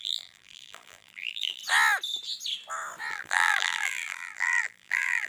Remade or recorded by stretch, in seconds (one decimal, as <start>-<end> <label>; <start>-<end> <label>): 0.0-1.6 remade; 1.6-3.1 recorded; 3.1-5.3 remade